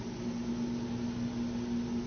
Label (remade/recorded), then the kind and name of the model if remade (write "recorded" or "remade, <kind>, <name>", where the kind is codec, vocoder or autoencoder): recorded